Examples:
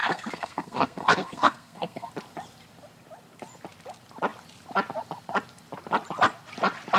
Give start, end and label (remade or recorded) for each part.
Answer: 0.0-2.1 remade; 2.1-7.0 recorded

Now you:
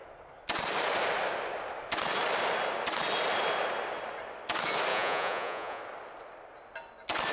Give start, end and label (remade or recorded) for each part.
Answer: 0.0-4.9 recorded; 4.9-5.8 remade; 5.8-7.3 recorded

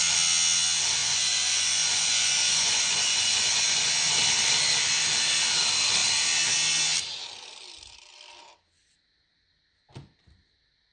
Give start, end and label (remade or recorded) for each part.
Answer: 0.0-1.0 recorded; 1.0-3.9 remade; 3.9-10.9 recorded

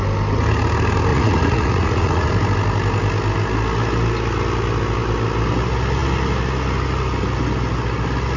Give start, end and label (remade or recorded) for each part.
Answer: 0.0-1.1 recorded; 1.1-2.3 remade; 2.3-8.4 recorded